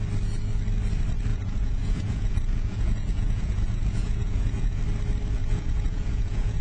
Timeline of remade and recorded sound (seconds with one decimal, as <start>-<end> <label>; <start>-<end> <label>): 0.0-1.3 recorded; 1.3-4.8 remade; 4.8-5.4 recorded; 5.4-6.6 remade